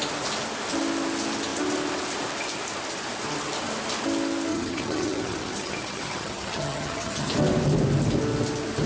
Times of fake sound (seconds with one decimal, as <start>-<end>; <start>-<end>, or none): 4.5-7.3